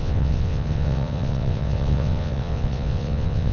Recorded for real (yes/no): no